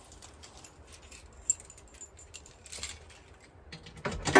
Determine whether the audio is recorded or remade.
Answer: recorded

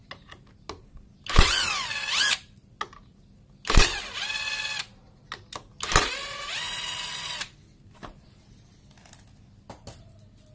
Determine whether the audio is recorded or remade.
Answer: recorded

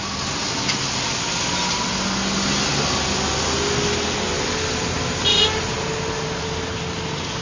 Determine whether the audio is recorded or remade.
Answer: recorded